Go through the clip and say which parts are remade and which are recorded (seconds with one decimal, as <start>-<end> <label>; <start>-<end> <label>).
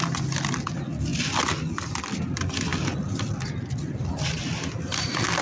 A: 0.0-5.4 recorded